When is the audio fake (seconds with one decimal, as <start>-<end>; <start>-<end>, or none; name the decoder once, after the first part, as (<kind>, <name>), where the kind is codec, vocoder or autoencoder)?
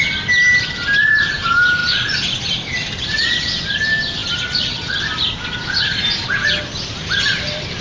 none